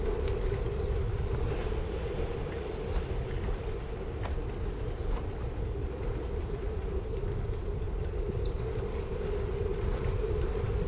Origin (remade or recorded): recorded